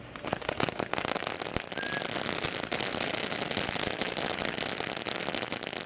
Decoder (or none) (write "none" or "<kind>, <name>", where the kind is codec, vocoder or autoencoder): none